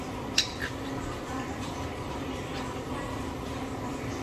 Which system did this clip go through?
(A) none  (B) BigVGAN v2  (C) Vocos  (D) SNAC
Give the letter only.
B